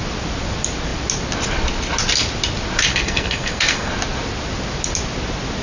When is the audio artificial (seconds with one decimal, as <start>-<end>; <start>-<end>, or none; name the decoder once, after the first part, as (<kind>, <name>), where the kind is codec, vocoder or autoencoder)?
2.9-3.9 (codec, SNAC)

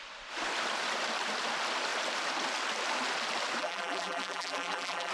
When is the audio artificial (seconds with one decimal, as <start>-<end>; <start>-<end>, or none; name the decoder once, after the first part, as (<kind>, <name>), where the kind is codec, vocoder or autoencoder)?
3.6-5.1 (vocoder, BigVGAN v2)

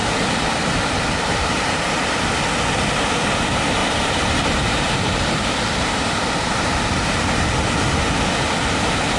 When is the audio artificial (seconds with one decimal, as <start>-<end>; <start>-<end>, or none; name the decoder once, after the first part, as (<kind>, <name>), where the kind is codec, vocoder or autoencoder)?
0.0-1.8 (vocoder, BigVGAN v2); 3.8-7.5

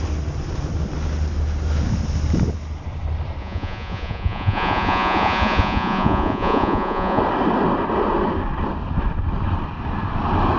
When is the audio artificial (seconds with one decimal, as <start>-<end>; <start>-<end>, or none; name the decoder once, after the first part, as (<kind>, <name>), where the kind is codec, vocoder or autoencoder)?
3.4-7.2 (vocoder, Vocos)

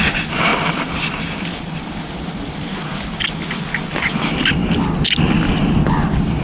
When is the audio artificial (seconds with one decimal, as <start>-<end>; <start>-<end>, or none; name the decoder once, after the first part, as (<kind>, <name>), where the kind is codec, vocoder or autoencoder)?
none

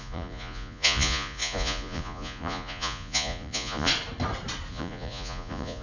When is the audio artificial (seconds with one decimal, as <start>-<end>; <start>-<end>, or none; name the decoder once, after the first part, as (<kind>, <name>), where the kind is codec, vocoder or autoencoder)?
0.0-3.9 (vocoder, Vocos); 4.7-5.8